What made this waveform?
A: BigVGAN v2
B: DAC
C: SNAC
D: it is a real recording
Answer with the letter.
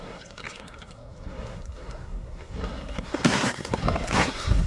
C